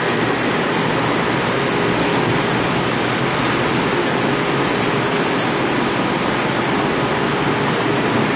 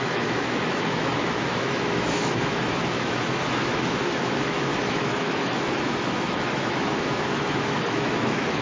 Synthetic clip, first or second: second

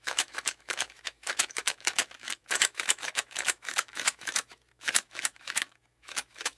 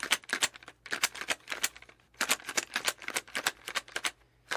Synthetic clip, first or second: first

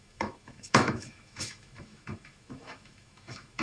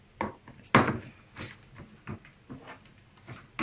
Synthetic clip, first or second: first